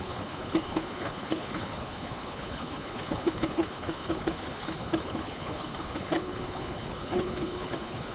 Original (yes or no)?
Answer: no